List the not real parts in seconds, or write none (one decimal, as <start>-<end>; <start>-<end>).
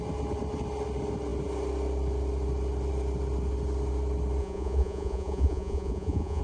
4.4-6.4